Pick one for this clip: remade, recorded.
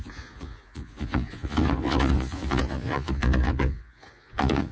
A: remade